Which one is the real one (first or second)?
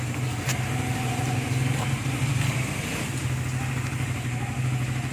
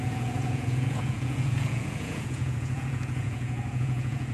first